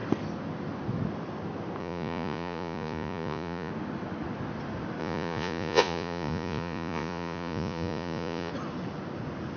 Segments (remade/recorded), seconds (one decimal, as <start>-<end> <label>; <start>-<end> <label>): 0.0-1.8 recorded; 1.8-3.7 remade; 3.7-5.0 recorded; 5.0-8.5 remade; 8.5-9.6 recorded